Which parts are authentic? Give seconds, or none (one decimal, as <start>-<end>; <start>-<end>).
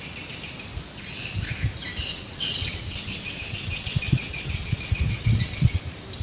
0.0-2.1; 5.8-6.2